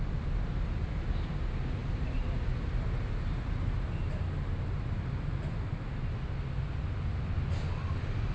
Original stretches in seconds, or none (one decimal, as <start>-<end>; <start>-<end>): 0.0-8.3